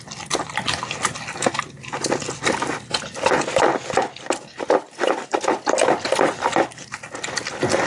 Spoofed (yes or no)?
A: no